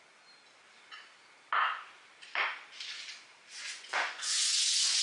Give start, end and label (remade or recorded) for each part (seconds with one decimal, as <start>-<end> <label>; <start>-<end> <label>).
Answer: 0.0-3.5 recorded; 3.5-5.0 remade